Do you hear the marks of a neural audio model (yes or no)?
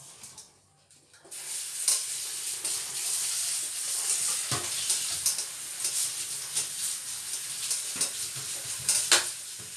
no